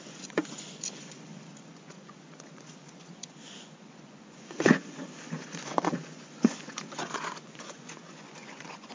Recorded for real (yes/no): no